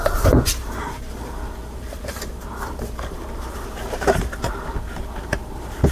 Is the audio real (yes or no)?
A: no